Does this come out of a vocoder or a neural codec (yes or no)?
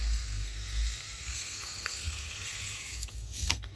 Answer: yes